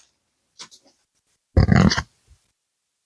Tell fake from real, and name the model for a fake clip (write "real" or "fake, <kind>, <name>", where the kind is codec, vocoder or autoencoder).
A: real